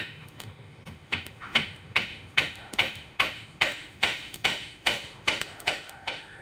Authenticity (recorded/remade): remade